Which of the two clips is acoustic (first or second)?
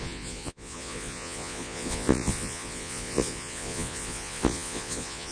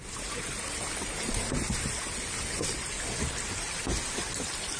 second